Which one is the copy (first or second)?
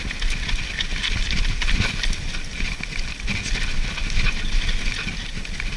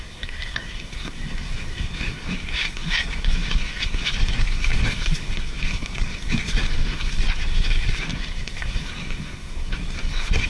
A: second